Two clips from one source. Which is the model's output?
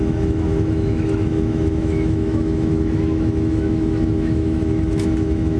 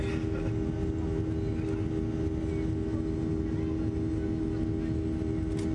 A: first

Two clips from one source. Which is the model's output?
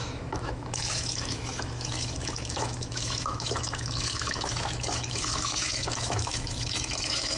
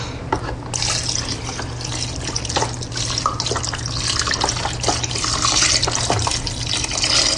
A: first